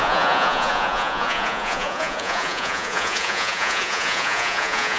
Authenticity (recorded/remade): remade